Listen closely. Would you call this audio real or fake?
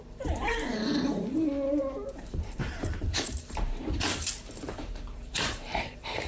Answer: fake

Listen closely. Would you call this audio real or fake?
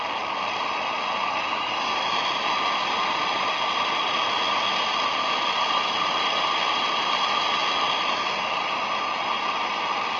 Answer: real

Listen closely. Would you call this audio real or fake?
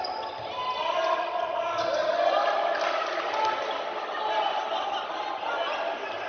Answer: real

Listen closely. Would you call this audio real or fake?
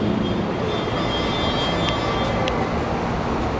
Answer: real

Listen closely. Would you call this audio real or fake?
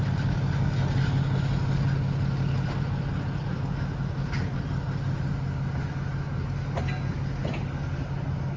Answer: real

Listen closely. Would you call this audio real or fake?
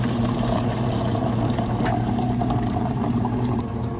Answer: fake